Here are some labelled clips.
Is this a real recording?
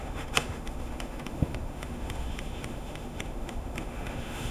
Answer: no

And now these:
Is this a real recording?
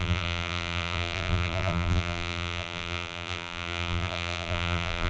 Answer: no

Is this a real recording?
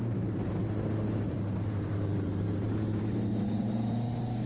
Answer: no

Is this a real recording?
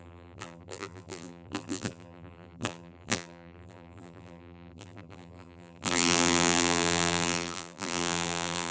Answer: no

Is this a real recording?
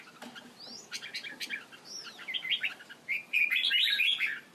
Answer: yes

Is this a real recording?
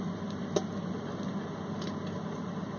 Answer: yes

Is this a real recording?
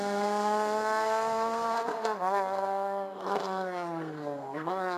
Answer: no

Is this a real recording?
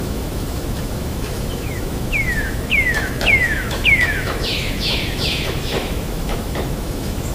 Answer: no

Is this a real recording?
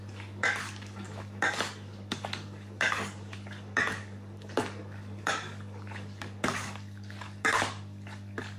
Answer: no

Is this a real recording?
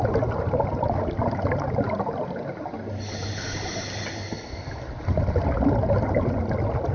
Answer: yes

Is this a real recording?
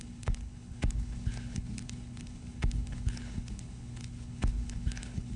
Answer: no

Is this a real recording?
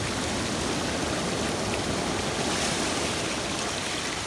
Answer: yes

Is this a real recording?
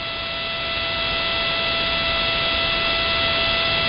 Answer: yes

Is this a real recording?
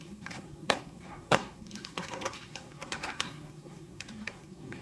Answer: no